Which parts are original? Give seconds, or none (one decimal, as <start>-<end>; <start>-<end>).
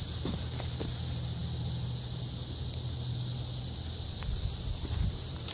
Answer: 0.0-5.5